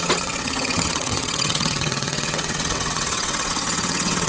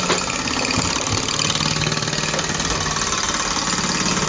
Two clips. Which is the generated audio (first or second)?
first